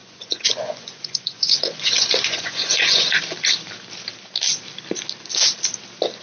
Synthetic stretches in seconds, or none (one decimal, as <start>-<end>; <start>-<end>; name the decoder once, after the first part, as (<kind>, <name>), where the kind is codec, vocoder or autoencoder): 0.0-3.2 (vocoder, Vocos)